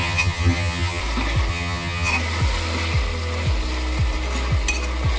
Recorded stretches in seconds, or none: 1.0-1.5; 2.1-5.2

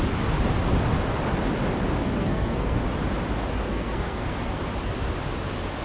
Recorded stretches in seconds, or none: 0.0-2.0; 2.8-3.7; 4.6-5.8

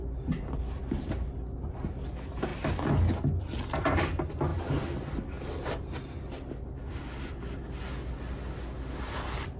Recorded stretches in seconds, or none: 0.0-9.6

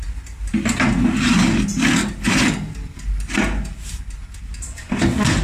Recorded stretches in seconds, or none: 0.0-5.4

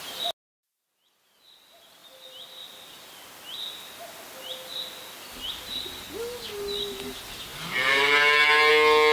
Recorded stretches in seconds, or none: 0.0-9.1

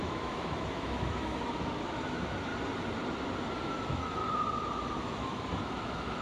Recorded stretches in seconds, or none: 2.5-3.6; 4.2-5.0

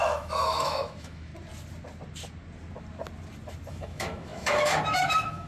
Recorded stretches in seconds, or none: 1.3-3.7

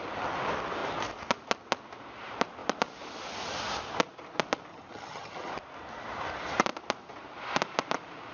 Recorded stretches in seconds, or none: 0.0-4.7; 5.5-8.3